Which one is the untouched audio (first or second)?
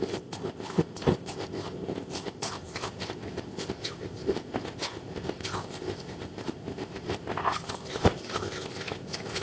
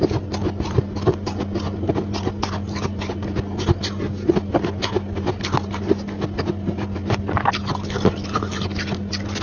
second